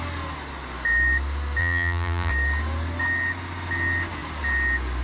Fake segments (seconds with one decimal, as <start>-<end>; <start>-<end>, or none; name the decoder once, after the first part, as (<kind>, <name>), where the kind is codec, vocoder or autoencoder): 1.6-2.3 (vocoder, BigVGAN v2)